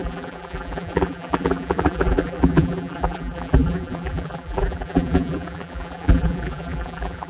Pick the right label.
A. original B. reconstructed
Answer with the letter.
B